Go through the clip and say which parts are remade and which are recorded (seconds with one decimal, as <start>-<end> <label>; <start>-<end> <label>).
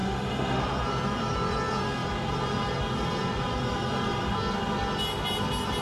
0.0-0.6 remade; 0.6-5.8 recorded